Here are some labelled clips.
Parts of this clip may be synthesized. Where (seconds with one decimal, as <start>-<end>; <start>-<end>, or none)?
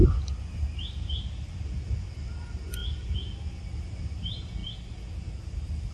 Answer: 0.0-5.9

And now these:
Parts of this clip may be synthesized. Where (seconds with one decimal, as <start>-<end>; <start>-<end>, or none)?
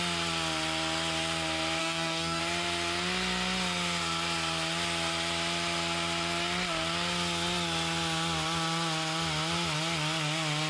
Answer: 1.8-2.4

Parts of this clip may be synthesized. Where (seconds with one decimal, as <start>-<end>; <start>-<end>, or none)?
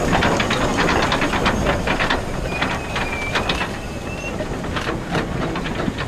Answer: none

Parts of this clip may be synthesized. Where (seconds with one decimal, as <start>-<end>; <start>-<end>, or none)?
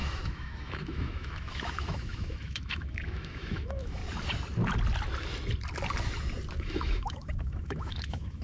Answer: 0.0-4.0; 6.5-8.4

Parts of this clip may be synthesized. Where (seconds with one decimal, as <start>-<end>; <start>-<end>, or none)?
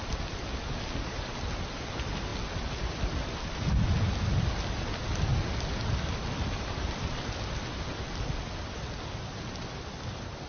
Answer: none